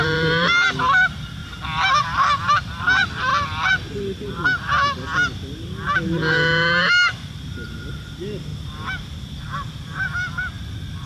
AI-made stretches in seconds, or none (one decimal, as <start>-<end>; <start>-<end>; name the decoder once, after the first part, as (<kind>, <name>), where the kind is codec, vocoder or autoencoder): 0.0-1.4 (vocoder, BigVGAN v2); 2.0-3.3; 7.9-8.5; 9.0-11.1